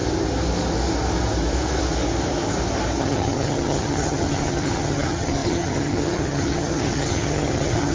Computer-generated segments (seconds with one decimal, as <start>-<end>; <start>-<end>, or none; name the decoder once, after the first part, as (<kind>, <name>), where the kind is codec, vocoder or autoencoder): 3.0-7.9 (vocoder, HiFi-GAN)